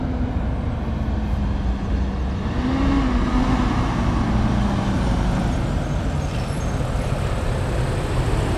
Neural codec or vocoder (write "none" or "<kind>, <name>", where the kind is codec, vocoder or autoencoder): none